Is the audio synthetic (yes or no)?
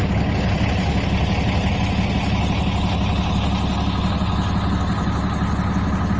no